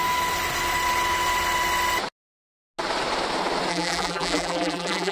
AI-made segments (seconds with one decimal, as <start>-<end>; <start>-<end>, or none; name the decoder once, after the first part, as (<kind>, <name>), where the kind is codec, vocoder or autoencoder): 3.7-5.1 (vocoder, BigVGAN v2)